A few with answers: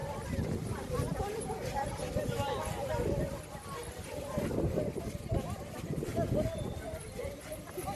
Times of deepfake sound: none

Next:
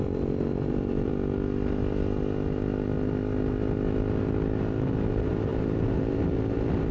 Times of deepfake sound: 0.0-1.1 (vocoder, BigVGAN v2); 5.1-6.9

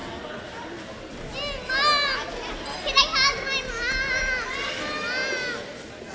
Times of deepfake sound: none

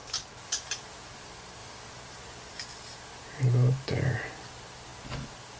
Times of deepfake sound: 1.6-2.6 (vocoder, BigVGAN v2)

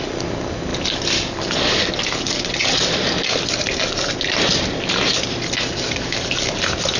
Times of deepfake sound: none

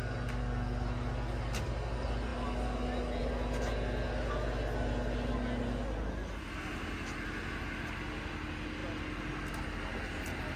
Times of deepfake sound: none

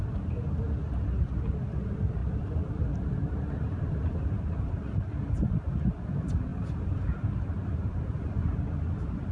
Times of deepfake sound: 2.2-5.5 (vocoder, BigVGAN v2); 6.5-8.2

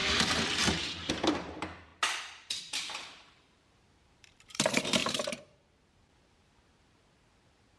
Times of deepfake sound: 0.0-1.9 (vocoder, BigVGAN v2); 2.6-7.8